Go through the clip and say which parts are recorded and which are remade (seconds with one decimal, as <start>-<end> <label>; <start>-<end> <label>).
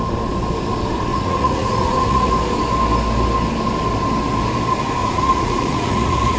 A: 0.0-1.1 recorded; 1.1-2.3 remade; 2.3-5.0 recorded; 5.0-6.4 remade